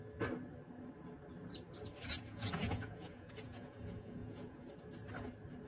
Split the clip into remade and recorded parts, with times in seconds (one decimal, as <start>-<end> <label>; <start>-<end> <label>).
0.0-2.0 recorded; 2.0-4.7 remade; 4.7-5.7 recorded